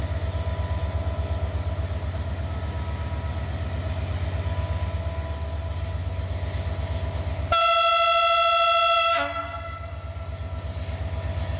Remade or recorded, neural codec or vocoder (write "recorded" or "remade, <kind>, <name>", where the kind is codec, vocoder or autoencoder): recorded